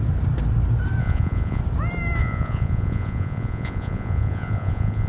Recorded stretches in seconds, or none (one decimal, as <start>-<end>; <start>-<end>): 0.0-1.0; 1.6-2.2